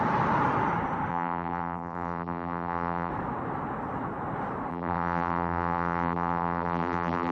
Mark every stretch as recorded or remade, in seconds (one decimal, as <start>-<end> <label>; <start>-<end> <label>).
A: 0.0-1.1 recorded; 1.1-3.1 remade; 3.1-4.7 recorded; 4.7-7.3 remade